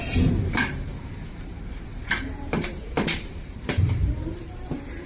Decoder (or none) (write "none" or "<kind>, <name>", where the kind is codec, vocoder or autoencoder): vocoder, BigVGAN v2